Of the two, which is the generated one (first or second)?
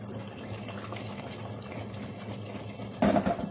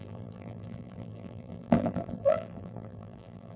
second